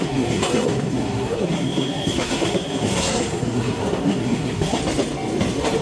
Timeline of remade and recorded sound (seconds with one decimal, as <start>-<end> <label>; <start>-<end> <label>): 0.0-4.8 remade; 4.8-5.8 recorded